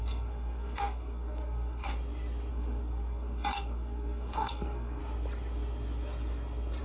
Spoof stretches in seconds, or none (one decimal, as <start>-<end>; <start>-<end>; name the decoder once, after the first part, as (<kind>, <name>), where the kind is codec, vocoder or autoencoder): 0.0-1.9 (codec, SNAC); 2.5-5.0

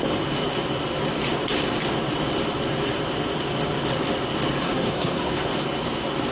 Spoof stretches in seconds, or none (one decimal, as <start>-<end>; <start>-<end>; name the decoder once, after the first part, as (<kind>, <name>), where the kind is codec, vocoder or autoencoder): 4.6-5.5 (codec, SNAC)

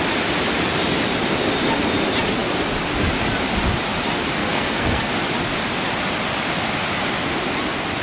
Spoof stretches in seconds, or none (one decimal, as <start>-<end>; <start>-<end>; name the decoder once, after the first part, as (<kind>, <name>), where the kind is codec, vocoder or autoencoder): 4.4-5.1 (codec, SNAC)

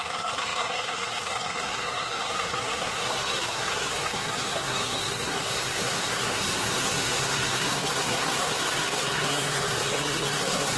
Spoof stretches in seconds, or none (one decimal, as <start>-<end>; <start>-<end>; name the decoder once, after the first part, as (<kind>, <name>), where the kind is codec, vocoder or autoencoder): 0.0-10.8 (codec, SNAC)

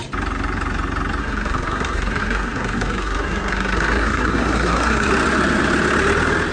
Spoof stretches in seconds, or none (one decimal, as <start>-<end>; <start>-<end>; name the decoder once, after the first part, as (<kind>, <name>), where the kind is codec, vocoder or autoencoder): 1.2-5.1 (codec, SNAC)